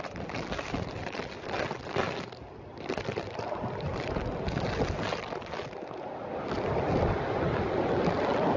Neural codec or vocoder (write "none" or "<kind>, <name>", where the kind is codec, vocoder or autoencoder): none